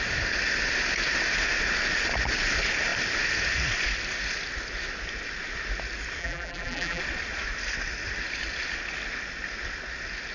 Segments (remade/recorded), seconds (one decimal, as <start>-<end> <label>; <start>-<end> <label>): 0.0-6.2 recorded; 6.2-7.0 remade; 7.0-10.3 recorded